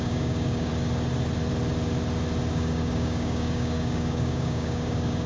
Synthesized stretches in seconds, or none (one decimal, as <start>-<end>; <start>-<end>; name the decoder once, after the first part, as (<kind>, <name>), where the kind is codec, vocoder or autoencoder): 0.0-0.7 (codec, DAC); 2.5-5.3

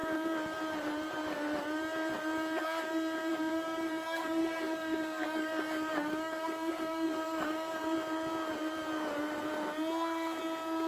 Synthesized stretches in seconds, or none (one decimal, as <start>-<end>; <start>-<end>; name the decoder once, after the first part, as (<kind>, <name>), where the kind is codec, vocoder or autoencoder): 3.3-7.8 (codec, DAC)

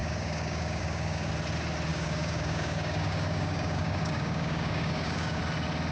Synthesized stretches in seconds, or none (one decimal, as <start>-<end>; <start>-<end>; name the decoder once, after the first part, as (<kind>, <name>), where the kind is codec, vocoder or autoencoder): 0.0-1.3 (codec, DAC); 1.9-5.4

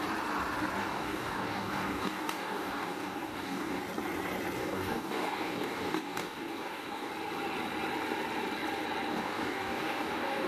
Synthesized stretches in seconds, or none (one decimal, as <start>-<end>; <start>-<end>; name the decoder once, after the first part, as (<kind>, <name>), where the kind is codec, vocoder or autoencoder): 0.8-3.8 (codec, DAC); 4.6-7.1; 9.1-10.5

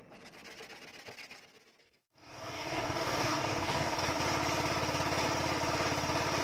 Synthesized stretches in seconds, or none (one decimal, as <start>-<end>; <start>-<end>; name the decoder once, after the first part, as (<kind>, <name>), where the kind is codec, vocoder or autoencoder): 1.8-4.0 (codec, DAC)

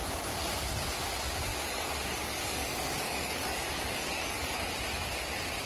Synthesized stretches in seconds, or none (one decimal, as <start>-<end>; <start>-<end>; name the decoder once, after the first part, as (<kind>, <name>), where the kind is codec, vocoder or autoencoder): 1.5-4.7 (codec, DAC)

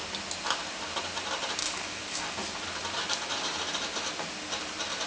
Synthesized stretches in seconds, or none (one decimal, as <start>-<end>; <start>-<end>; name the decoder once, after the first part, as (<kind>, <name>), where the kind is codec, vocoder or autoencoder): 1.6-2.3 (codec, DAC)

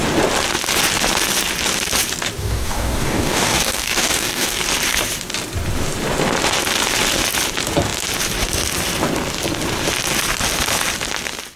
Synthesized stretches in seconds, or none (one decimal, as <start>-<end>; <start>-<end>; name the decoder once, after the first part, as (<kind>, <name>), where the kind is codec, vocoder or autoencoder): 2.4-4.6 (codec, DAC)